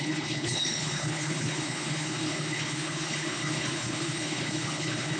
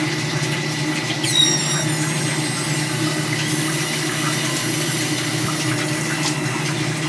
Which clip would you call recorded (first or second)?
second